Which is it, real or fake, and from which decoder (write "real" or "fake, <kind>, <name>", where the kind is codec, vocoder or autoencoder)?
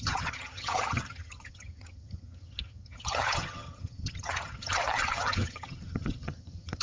fake, vocoder, HiFi-GAN